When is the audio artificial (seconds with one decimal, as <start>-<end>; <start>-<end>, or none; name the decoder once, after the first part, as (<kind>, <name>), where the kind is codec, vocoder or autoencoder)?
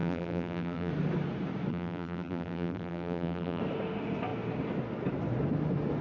0.0-0.9 (vocoder, BigVGAN v2); 1.7-3.6